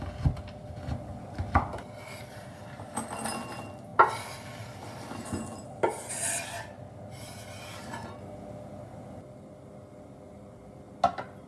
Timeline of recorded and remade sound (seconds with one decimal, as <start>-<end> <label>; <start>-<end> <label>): 0.0-11.5 recorded